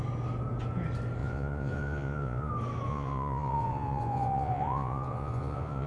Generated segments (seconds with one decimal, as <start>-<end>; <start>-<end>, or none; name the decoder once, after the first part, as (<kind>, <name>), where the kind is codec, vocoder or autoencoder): 1.2-2.5 (vocoder, Vocos); 2.9-5.9